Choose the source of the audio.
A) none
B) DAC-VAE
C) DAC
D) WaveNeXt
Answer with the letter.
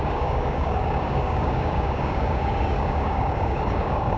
C